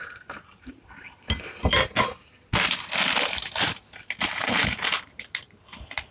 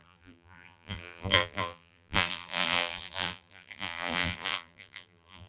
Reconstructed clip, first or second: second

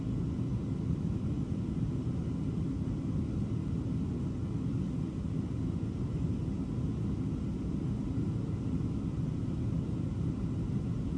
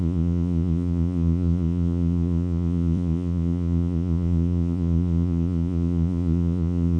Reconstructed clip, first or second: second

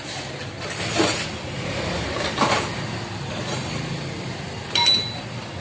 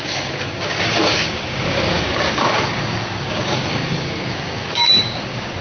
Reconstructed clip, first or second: second